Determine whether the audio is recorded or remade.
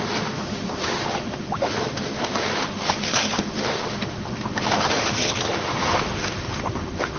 remade